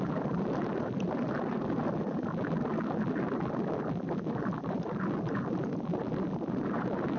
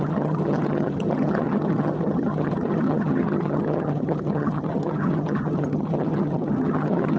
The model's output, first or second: second